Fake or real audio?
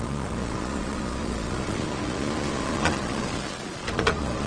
fake